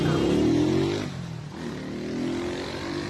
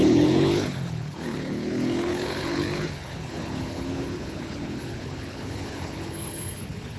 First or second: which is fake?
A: second